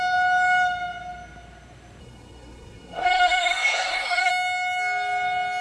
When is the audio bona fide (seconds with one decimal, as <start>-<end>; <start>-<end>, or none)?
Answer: 0.0-2.0; 4.3-5.6